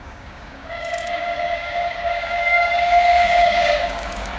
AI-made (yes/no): yes